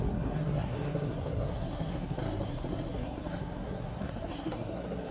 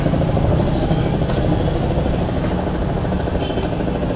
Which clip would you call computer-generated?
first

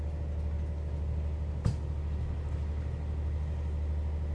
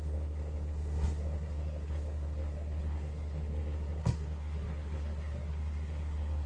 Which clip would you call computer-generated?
second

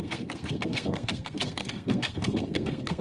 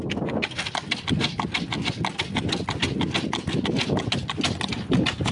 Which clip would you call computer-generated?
first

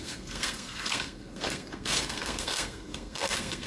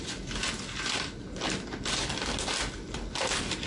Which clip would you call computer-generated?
first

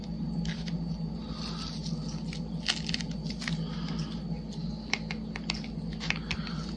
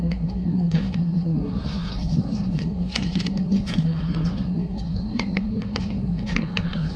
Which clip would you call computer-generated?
second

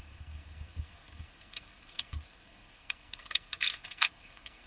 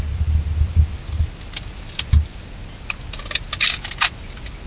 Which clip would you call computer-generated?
first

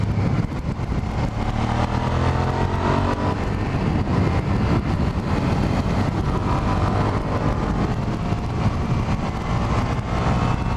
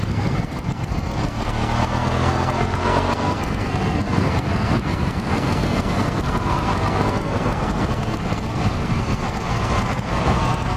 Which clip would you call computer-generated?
second